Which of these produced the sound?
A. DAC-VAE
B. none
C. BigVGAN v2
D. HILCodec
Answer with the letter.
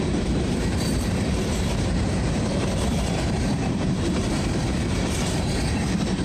C